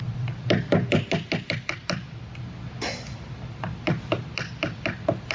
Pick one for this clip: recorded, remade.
recorded